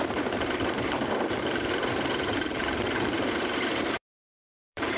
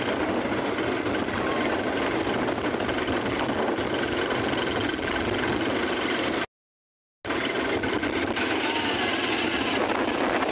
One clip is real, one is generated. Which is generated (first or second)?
first